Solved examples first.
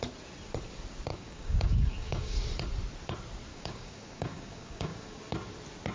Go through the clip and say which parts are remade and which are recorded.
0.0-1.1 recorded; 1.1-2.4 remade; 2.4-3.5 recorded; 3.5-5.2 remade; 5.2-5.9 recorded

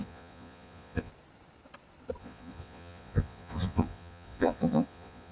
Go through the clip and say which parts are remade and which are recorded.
0.0-1.1 remade; 1.1-2.2 recorded; 2.2-5.3 remade

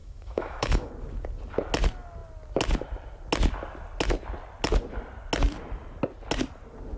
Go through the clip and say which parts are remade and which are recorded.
0.0-0.9 remade; 0.9-7.0 recorded

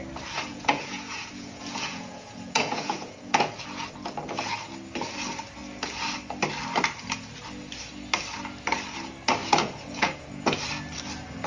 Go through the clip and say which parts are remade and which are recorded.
0.0-0.5 recorded; 0.5-3.6 remade; 3.6-9.4 recorded; 9.4-10.6 remade; 10.6-11.5 recorded